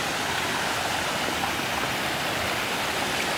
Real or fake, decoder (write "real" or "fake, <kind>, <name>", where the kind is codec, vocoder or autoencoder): real